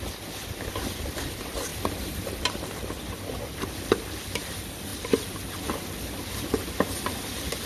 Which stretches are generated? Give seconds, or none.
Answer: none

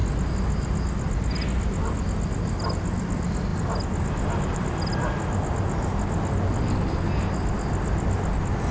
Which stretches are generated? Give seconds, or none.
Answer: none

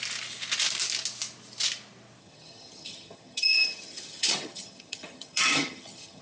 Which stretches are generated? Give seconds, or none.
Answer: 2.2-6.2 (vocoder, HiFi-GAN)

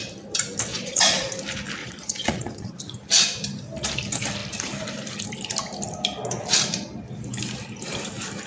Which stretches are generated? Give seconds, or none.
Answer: 0.7-1.3 (vocoder, Vocos); 1.8-2.8

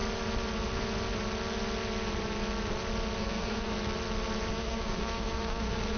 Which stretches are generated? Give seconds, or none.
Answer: 3.2-3.7 (codec, SNAC); 4.5-6.0

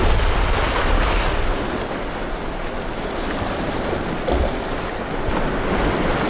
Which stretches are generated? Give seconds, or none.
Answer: 1.5-5.3 (vocoder, BigVGAN v2)